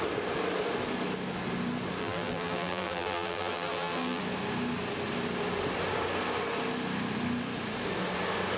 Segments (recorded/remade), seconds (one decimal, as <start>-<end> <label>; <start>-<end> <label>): 0.0-2.0 recorded; 2.0-4.2 remade; 4.2-8.6 recorded